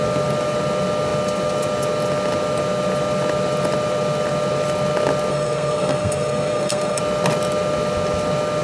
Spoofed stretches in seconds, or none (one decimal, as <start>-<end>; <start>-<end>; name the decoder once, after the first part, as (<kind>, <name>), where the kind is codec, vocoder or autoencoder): 5.3-7.0 (codec, SNAC)